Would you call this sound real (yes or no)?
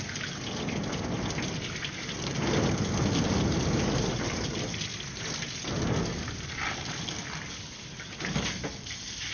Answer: yes